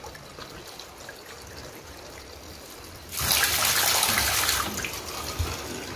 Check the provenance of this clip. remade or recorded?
recorded